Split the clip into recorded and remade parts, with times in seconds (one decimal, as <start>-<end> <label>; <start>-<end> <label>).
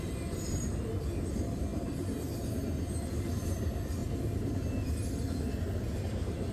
0.0-6.5 recorded